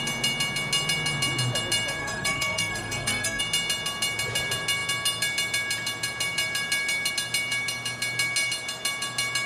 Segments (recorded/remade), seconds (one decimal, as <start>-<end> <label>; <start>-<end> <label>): 0.0-2.0 recorded; 2.0-3.4 remade; 3.4-9.5 recorded